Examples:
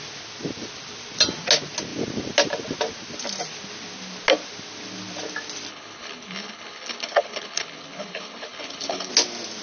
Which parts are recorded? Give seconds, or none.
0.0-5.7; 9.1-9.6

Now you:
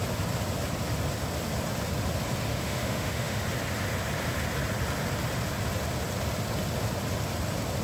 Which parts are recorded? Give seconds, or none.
0.0-2.5; 3.4-7.8

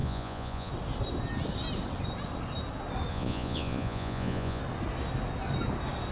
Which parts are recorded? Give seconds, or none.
0.7-3.1; 4.6-6.1

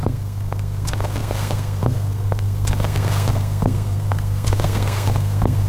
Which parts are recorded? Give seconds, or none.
none

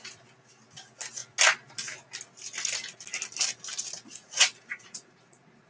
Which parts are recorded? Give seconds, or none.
0.0-4.1